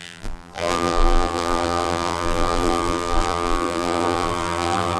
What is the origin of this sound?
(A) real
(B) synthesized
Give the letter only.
B